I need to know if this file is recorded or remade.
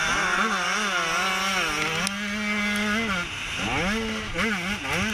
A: recorded